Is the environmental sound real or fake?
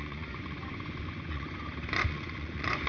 fake